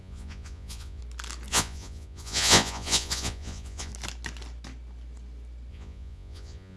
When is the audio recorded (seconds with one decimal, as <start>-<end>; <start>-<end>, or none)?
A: 1.0-1.5; 3.9-5.7